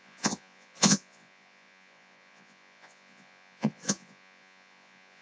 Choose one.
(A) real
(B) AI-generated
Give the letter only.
B